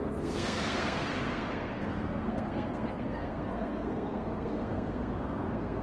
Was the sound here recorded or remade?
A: remade